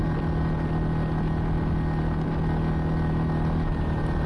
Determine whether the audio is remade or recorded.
recorded